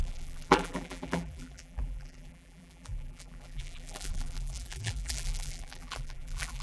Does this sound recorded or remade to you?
remade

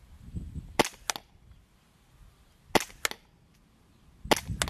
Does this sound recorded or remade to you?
recorded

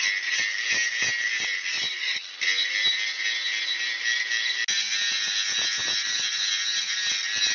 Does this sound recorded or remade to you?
recorded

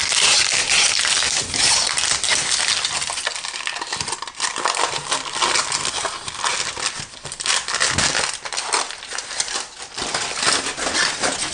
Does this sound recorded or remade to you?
recorded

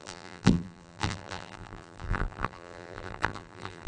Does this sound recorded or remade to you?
remade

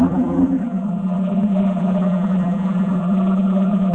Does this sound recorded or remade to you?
remade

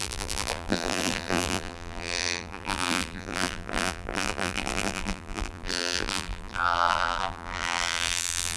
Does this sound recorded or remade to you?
remade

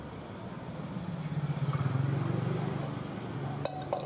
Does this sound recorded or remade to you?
recorded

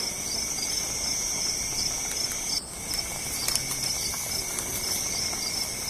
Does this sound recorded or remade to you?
recorded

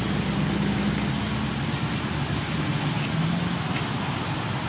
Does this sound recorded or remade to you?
recorded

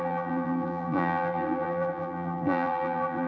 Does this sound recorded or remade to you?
remade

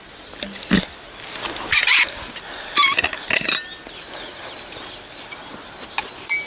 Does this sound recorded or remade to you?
recorded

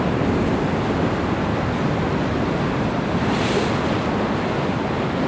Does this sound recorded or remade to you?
recorded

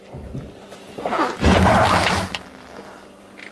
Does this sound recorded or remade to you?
remade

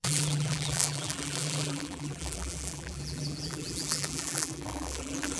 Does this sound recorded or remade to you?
remade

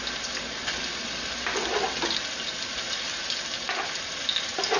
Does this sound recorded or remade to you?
recorded